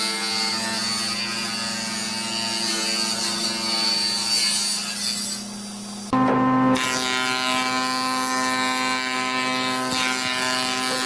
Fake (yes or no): no